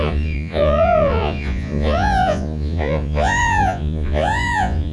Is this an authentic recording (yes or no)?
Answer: no